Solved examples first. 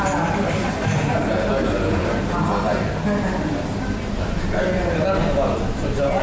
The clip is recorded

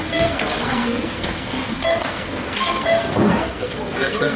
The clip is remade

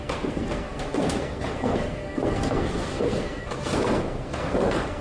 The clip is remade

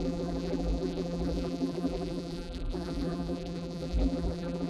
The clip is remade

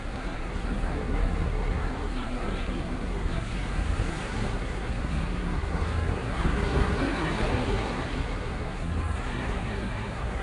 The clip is remade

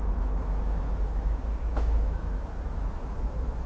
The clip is remade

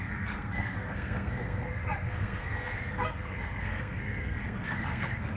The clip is remade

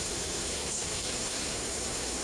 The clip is remade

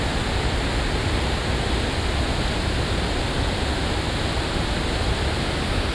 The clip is recorded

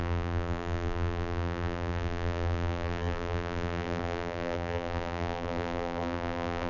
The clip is remade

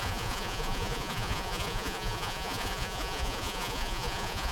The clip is remade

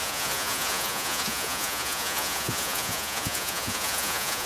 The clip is remade